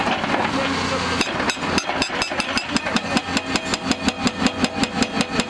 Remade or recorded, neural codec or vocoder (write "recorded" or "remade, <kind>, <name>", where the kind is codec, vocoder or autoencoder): recorded